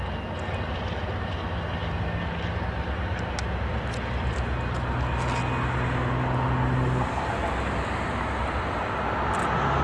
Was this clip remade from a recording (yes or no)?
no